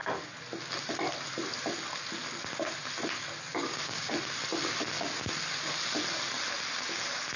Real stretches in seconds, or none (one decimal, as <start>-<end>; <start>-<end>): 0.0-3.5; 4.1-7.4